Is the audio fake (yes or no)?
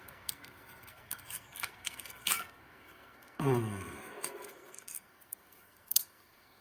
yes